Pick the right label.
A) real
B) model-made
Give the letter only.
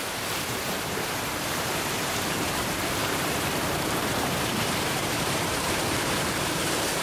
B